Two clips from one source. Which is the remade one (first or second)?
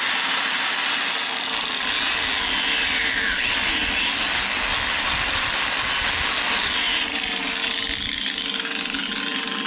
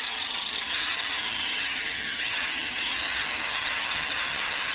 second